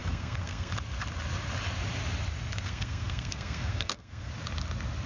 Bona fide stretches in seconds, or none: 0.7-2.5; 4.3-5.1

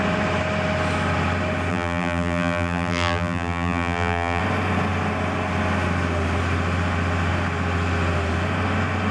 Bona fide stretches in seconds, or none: 0.0-1.7; 4.4-9.1

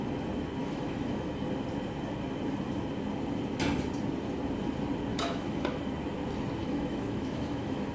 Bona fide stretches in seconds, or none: 0.0-0.6; 1.3-5.1; 5.8-6.6